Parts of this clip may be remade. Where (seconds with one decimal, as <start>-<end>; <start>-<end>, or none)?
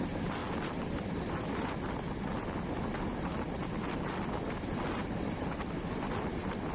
none